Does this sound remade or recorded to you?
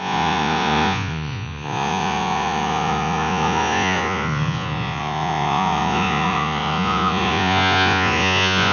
remade